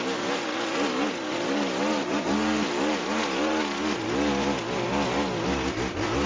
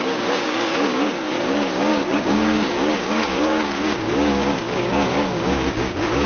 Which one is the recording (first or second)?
first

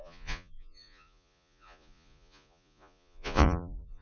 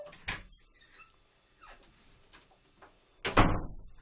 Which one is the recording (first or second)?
second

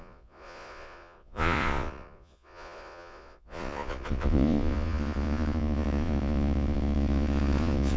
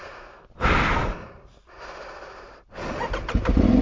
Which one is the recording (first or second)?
second